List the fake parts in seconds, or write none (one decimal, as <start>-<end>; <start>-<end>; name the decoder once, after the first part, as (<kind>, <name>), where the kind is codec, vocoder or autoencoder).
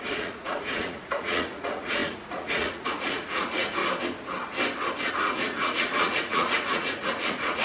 0.0-3.8 (vocoder, Vocos); 5.1-7.6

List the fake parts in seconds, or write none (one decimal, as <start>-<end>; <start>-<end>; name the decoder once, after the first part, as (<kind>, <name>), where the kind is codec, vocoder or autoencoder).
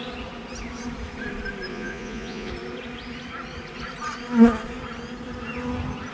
1.7-2.5 (vocoder, Vocos)